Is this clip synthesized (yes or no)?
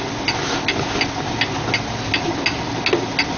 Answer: no